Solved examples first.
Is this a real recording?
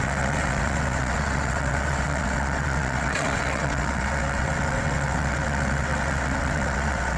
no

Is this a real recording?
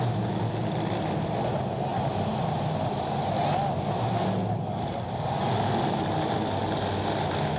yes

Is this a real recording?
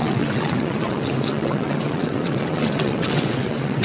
no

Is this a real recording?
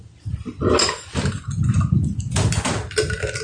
yes